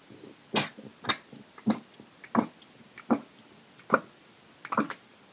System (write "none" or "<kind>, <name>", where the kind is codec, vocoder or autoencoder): none